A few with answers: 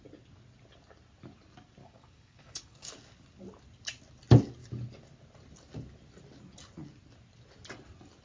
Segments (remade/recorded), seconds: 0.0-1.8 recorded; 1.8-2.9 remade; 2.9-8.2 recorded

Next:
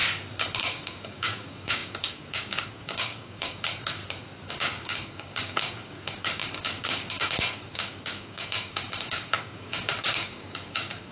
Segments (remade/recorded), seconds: 0.0-0.6 recorded; 0.6-4.0 remade; 4.0-4.5 recorded; 4.5-11.1 remade

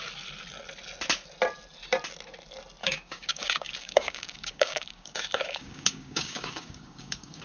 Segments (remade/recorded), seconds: 0.0-2.8 recorded; 2.8-7.4 remade

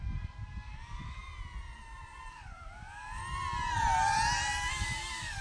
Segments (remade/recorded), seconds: 0.0-1.2 remade; 1.2-2.3 recorded; 2.3-3.2 remade; 3.2-4.7 recorded; 4.7-5.4 remade

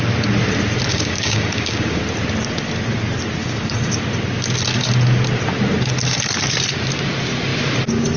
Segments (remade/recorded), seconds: 0.0-0.9 recorded; 0.9-2.0 remade; 2.0-3.4 recorded; 3.4-4.0 remade; 4.0-8.2 recorded